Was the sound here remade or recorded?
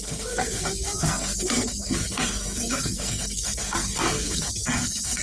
remade